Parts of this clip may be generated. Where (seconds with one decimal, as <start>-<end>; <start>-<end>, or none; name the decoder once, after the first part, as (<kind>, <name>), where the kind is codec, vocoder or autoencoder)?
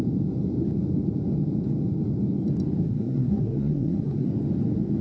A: 2.8-4.3 (codec, SNAC)